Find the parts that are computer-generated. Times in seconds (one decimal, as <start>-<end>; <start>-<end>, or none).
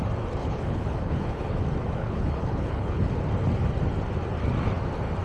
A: 0.4-1.6; 2.0-3.0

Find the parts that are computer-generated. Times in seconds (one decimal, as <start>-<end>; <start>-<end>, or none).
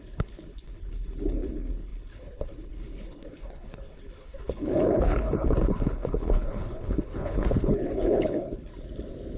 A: 0.0-8.7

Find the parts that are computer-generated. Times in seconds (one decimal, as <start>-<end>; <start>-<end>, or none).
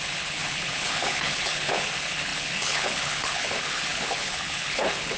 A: 0.0-5.2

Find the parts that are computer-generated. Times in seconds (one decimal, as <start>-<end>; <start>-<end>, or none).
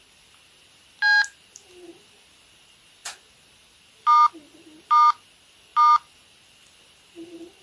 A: none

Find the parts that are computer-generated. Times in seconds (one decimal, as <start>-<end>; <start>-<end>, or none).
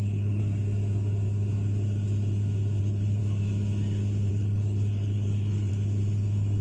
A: 0.0-0.4; 2.8-3.2; 4.3-5.7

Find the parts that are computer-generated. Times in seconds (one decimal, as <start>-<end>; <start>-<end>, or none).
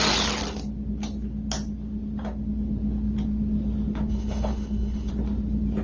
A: 4.1-5.1